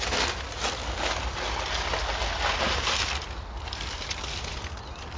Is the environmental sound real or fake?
real